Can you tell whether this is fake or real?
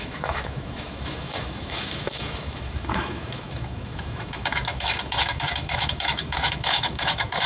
fake